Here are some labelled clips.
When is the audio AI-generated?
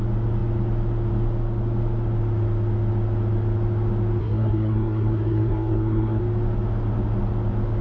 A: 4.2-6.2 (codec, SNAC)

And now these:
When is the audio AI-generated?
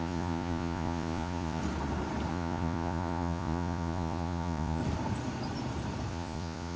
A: 0.0-1.6 (vocoder, Vocos); 2.3-4.8; 6.1-6.8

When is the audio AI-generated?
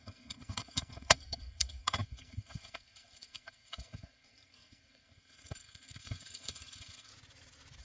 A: 0.0-7.1 (codec, SNAC)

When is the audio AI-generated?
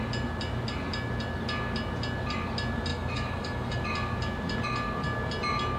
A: 2.9-3.8 (autoencoder, DAC-VAE)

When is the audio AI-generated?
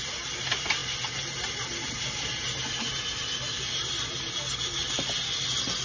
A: none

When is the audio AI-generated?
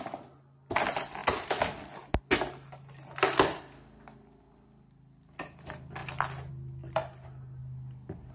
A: 0.0-1.2 (vocoder, BigVGAN v2); 4.4-6.0; 6.5-8.3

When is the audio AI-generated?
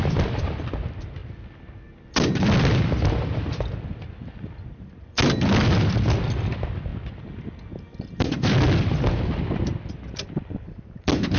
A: none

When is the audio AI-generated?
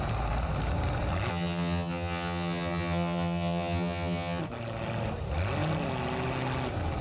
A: 1.3-4.4 (vocoder, HiFi-GAN)